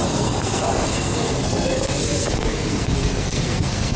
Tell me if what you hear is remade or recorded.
remade